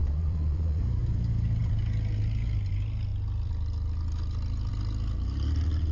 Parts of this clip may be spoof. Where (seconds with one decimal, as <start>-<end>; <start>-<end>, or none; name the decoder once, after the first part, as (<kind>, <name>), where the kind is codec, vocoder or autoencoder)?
0.0-0.8 (vocoder, Vocos)